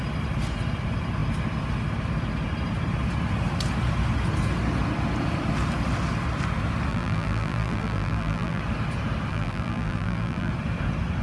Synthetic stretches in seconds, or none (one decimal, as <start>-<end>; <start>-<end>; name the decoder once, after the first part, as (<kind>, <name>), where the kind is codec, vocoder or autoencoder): 6.9-8.6 (vocoder, BigVGAN v2); 9.3-10.5